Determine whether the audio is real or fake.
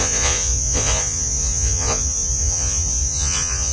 fake